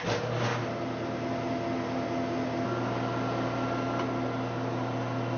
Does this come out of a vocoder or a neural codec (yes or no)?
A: no